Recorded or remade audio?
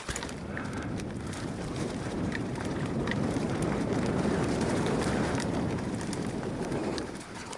remade